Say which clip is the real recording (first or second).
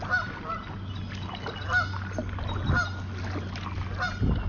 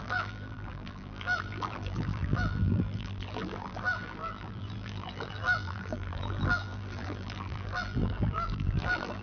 first